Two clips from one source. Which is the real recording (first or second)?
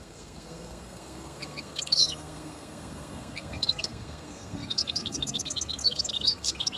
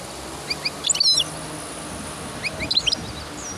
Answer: second